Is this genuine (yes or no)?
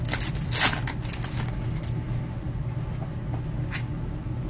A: yes